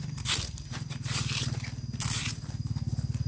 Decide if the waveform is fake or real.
real